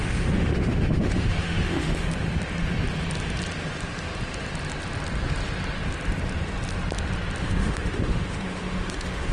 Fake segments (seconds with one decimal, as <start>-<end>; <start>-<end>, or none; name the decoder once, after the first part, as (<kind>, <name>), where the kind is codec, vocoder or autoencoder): 0.0-2.3 (autoencoder, DAC-VAE); 7.4-9.3